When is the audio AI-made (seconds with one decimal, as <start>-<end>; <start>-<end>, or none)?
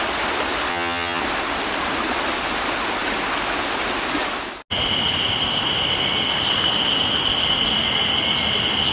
0.7-1.2